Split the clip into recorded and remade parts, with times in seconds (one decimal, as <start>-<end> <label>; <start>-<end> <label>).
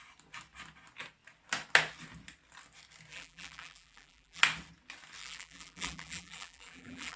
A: 0.0-3.1 recorded; 3.1-4.4 remade; 4.4-5.2 recorded; 5.2-7.2 remade